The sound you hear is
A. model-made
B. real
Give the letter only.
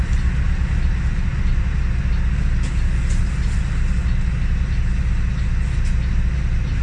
B